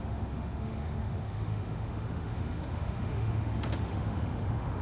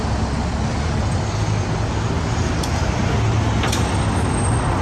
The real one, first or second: second